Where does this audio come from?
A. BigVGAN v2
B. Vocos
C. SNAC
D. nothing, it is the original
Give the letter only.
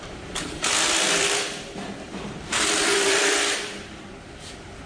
A